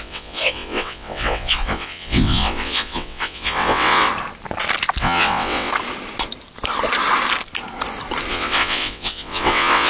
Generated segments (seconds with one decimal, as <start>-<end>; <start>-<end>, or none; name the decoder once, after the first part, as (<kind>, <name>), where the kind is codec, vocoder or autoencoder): 0.0-4.1 (vocoder, WaveNeXt); 5.0-5.7; 8.3-9.9